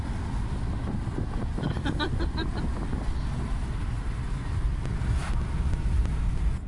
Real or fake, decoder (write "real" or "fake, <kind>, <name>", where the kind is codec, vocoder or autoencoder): real